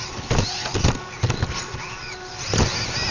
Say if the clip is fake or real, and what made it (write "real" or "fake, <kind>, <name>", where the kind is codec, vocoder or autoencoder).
real